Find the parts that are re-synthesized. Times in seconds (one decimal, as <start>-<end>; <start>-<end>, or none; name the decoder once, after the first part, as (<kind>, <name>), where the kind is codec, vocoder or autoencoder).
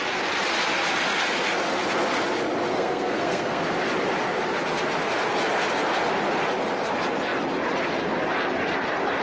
2.7-3.6 (codec, SNAC)